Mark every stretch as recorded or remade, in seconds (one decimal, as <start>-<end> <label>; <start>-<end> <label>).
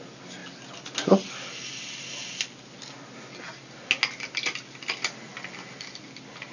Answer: 0.0-6.5 recorded